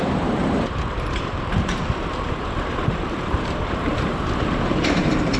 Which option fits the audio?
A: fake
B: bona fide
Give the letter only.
A